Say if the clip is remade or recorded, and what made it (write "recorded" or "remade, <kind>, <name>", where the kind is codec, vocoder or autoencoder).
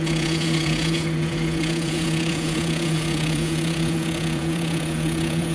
remade, vocoder, Vocos